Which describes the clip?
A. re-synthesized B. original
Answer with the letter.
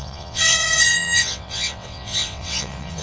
A